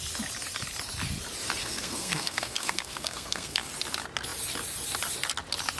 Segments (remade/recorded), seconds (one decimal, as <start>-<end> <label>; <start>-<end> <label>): 0.0-1.6 recorded; 1.6-3.7 remade; 3.7-5.8 recorded

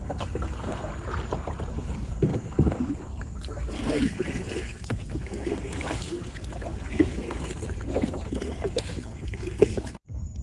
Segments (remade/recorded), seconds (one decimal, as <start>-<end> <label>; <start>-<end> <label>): 0.0-0.9 remade; 0.9-1.7 recorded; 1.7-10.4 remade